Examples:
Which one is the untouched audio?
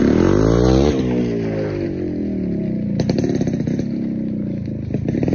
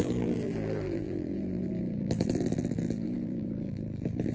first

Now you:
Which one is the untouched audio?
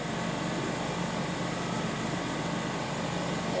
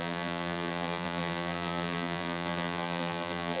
first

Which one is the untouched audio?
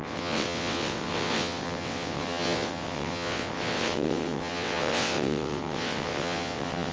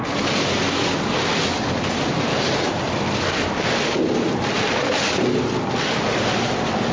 second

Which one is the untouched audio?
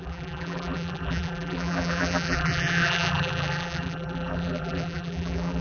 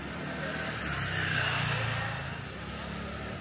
second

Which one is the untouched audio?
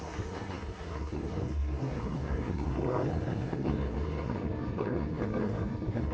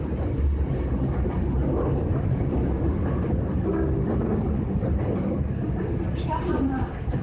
second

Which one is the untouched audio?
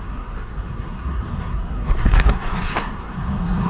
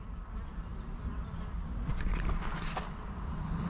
second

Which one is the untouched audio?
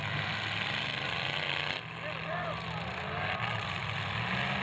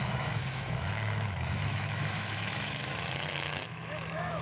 first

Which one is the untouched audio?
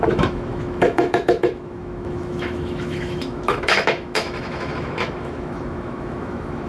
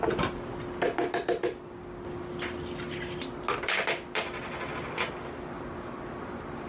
second